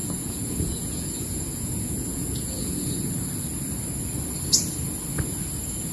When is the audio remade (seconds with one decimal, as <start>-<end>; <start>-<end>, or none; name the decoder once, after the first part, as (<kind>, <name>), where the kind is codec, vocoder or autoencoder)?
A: 0.0-3.1 (vocoder, Vocos)